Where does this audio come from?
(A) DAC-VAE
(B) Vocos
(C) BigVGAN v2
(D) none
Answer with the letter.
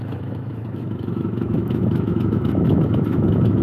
A